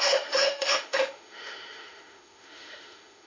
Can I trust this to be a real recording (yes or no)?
no